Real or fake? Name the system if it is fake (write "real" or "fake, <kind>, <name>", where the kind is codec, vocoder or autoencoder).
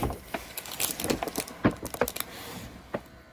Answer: real